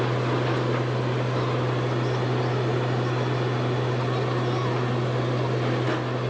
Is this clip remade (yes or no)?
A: no